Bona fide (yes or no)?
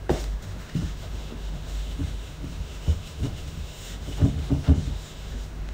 no